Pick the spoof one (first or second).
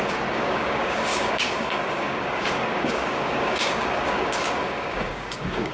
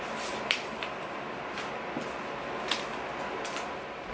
first